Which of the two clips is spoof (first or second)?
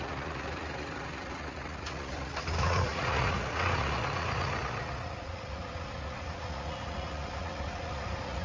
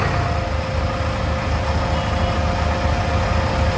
first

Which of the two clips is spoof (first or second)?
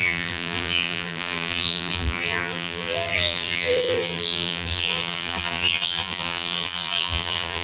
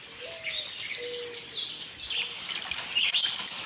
first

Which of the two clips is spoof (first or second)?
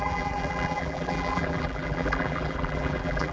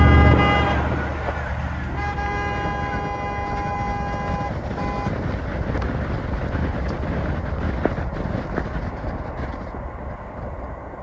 first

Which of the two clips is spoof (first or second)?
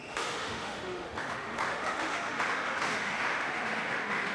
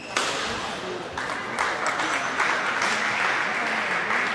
first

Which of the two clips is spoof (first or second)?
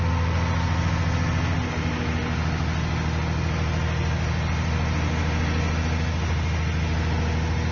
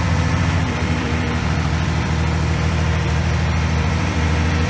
second